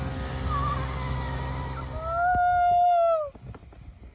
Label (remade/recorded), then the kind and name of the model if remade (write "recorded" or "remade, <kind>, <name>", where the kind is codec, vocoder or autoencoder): recorded